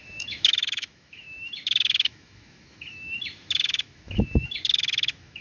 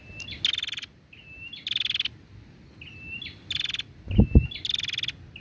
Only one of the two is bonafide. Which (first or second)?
second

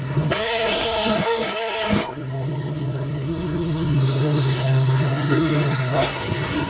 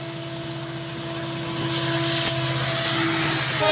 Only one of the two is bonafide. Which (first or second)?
second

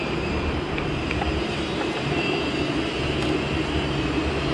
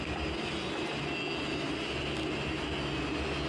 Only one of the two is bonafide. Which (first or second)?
second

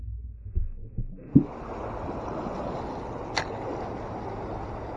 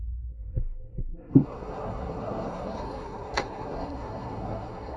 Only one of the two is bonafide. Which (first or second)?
first